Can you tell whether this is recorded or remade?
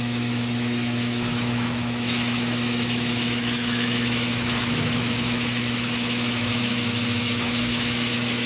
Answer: remade